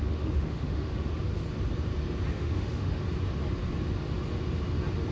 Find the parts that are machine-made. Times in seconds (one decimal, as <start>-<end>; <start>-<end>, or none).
0.0-1.0; 2.3-3.0

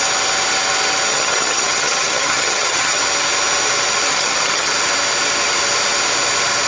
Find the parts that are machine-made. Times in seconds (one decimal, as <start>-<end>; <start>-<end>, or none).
1.1-3.0; 4.1-4.7

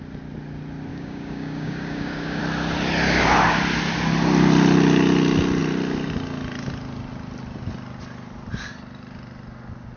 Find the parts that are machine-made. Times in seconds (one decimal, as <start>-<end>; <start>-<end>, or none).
0.9-2.4

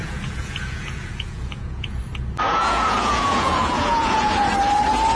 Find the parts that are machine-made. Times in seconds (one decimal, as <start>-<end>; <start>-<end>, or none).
0.0-2.0; 2.5-4.3

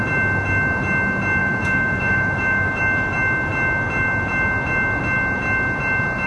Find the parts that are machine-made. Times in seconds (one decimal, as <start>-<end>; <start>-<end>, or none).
1.4-2.8